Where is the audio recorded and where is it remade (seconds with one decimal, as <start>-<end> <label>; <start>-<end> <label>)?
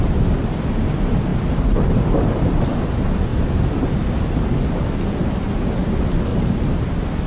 0.0-1.3 recorded; 1.3-2.5 remade; 2.5-3.3 recorded; 3.3-4.7 remade; 4.7-6.3 recorded; 6.3-6.8 remade; 6.8-7.3 recorded